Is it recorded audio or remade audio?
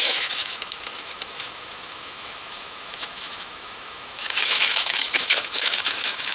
remade